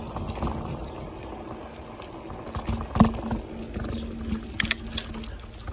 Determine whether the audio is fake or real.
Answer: real